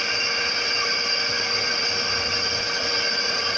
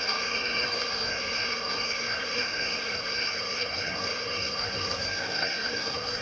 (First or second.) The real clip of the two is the first